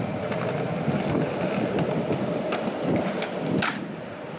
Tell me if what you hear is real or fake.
real